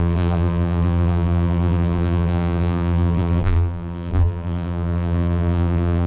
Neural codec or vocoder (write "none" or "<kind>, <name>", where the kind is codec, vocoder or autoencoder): vocoder, BigVGAN v2